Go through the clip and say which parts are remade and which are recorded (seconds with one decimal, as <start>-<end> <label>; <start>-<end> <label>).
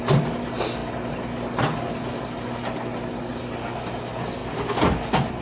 0.0-5.4 recorded